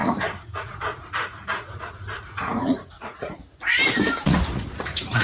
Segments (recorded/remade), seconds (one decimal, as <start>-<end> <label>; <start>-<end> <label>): 0.0-3.4 remade; 3.4-4.2 recorded; 4.2-5.2 remade